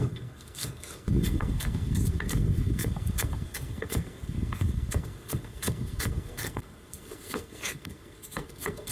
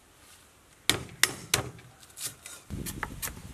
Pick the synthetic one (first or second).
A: first